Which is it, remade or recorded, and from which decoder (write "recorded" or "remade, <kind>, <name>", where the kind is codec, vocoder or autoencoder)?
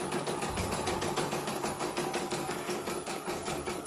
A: remade, codec, DAC